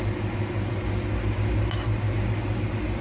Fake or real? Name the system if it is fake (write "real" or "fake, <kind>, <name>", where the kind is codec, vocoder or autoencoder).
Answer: real